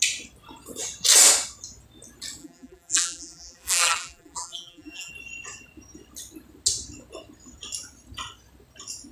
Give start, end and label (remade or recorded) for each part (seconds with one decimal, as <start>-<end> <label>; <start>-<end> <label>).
0.0-2.4 recorded; 2.4-5.1 remade; 5.1-9.1 recorded